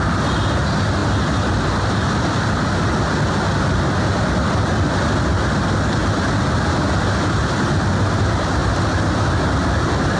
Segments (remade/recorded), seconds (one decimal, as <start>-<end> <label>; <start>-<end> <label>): 0.0-10.2 recorded